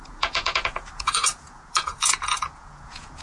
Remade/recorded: remade